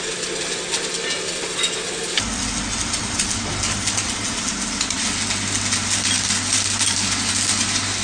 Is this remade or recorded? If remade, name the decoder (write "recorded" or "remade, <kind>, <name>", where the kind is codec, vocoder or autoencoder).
recorded